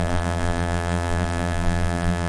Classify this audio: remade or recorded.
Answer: remade